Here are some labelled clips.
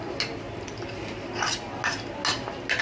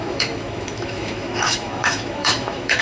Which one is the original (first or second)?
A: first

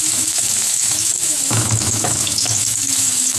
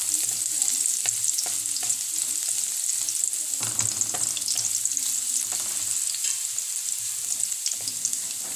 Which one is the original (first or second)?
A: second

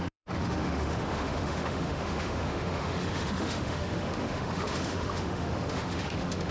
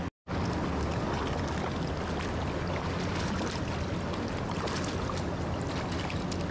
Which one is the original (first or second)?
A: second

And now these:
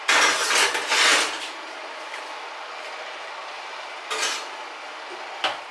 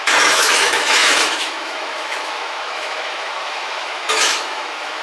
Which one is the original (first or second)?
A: first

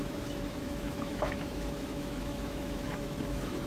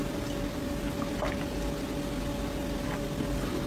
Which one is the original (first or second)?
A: second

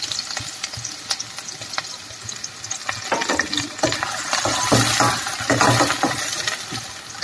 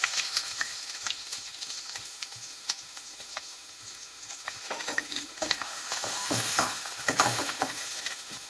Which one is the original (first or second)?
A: first